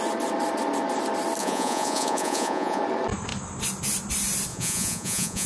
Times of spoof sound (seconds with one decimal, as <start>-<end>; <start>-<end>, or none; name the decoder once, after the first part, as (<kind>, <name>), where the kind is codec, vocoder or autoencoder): 1.4-2.8 (vocoder, Vocos); 4.5-5.5